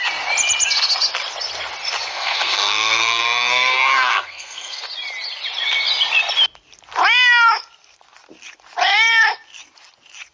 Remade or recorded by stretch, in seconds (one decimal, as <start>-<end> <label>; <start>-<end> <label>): 0.0-2.1 recorded; 2.1-4.8 remade; 4.8-10.3 recorded